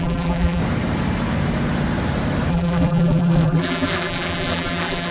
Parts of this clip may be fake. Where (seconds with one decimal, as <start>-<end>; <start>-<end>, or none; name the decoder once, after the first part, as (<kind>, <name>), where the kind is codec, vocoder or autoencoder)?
0.0-0.6 (vocoder, BigVGAN v2); 2.5-5.1